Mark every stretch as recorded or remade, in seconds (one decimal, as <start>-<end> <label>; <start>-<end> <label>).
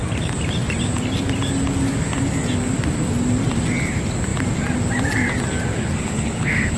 0.0-5.7 recorded; 5.7-6.8 remade